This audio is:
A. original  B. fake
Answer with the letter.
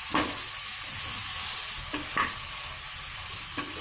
A